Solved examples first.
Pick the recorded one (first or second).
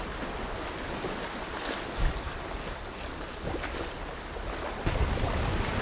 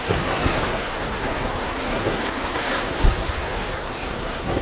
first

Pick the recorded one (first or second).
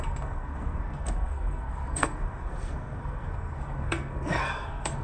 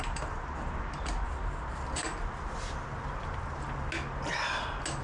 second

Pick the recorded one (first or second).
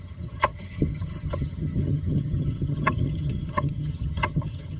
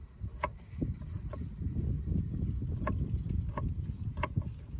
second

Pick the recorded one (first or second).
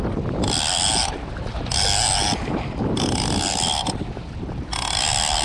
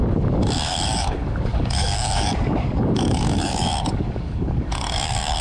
first